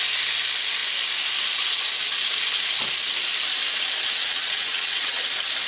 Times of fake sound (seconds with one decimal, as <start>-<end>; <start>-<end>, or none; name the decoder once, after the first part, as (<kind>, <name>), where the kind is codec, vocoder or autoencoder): 4.2-5.2 (vocoder, WaveNeXt)